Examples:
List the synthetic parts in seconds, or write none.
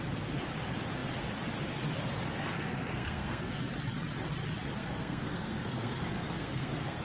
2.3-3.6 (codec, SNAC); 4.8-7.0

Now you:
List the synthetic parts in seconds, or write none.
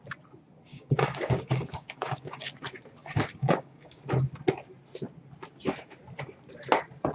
0.7-2.5 (codec, DAC); 3.0-4.0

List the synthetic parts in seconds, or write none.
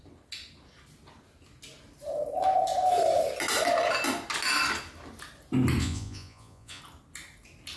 5.8-6.8 (vocoder, Vocos)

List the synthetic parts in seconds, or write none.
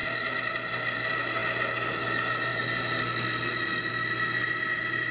none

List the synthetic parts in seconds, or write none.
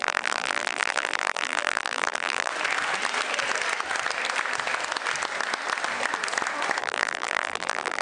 0.0-2.5 (vocoder, BigVGAN v2); 6.8-8.0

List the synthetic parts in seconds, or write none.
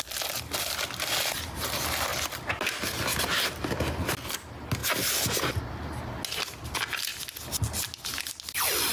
none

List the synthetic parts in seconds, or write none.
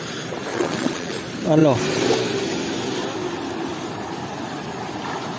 0.5-1.2 (vocoder, Vocos)